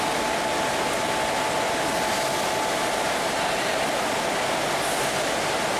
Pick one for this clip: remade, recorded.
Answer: recorded